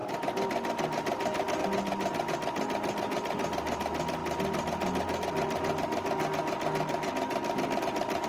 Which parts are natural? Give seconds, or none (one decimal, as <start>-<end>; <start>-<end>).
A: 0.0-8.3

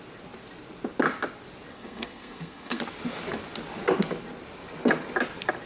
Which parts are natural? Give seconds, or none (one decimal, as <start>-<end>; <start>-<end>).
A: 0.0-1.7; 2.8-5.7

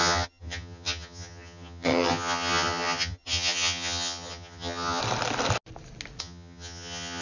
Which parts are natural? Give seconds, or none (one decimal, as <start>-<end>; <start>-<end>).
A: 5.0-6.2

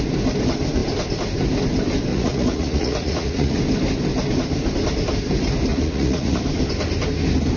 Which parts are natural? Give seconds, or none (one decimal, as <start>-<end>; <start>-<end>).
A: 0.0-2.1; 3.6-5.7; 6.4-7.6

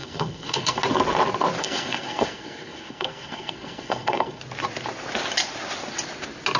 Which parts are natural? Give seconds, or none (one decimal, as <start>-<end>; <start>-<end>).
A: 0.8-1.6; 4.4-6.6

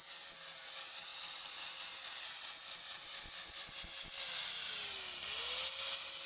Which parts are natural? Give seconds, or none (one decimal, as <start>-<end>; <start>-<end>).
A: 0.0-1.1; 3.7-6.3